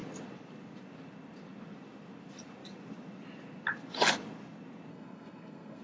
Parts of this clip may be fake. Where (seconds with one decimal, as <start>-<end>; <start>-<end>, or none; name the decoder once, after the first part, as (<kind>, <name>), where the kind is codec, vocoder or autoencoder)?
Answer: 4.9-5.8 (codec, SNAC)